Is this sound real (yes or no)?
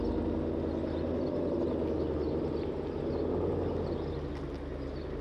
yes